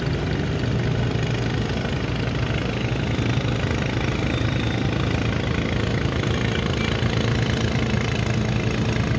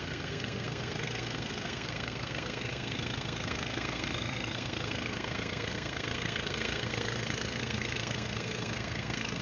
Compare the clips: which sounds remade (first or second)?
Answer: second